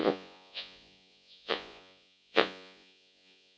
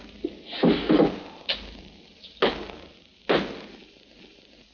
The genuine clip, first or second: second